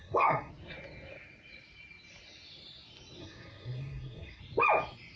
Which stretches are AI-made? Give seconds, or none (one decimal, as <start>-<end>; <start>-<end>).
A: 0.0-0.5; 3.2-4.4